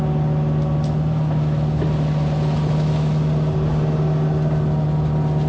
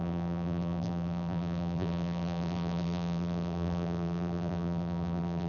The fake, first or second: second